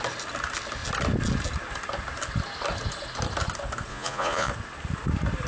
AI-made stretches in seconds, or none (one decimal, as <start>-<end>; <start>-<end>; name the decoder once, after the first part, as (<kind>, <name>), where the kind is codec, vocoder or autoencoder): 3.9-4.5 (vocoder, Vocos)